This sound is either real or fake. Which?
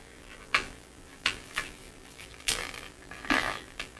fake